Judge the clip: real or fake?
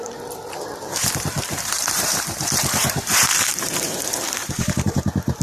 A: fake